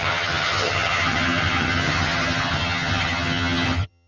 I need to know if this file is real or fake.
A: fake